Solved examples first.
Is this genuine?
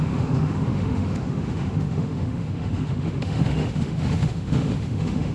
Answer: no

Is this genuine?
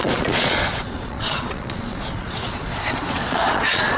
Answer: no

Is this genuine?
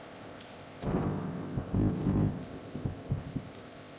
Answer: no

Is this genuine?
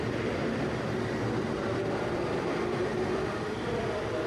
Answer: no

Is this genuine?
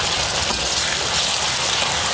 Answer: yes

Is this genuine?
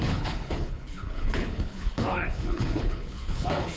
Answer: no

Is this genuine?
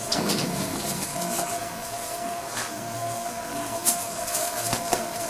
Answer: no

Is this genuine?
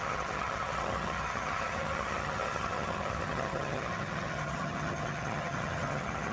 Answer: no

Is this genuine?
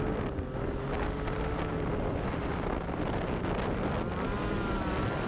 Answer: yes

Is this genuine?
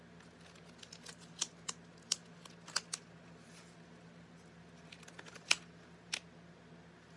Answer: yes